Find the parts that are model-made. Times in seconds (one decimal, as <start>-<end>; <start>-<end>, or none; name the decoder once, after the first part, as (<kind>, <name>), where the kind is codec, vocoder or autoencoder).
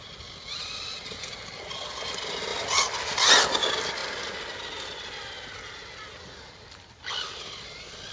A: none